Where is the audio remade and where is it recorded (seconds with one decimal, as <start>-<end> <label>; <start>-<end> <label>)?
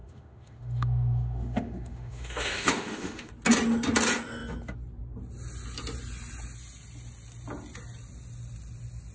0.0-3.3 remade; 3.3-9.1 recorded